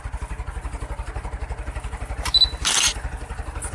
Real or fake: real